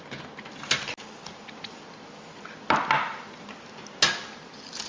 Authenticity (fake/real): real